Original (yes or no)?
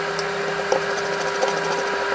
yes